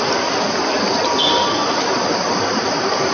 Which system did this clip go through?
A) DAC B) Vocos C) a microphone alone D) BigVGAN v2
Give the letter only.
D